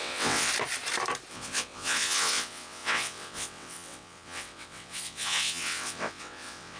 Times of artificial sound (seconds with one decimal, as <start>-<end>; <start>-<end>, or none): 0.0-0.5; 1.3-6.8